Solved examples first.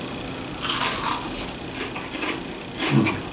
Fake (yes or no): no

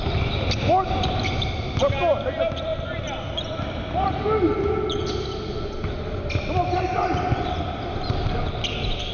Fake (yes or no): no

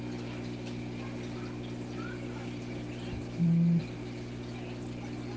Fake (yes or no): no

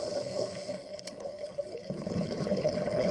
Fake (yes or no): yes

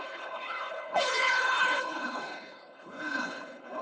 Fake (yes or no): yes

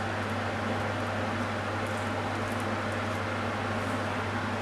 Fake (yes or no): no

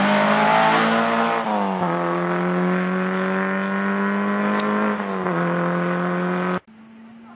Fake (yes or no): no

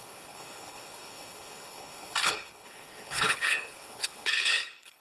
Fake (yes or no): yes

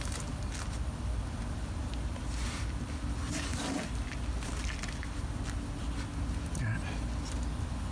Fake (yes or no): no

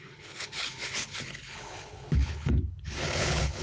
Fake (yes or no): yes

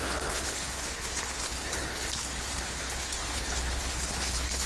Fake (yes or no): yes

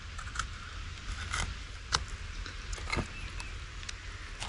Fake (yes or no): no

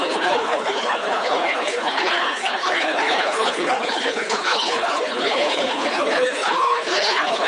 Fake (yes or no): yes